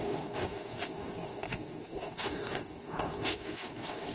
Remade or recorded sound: remade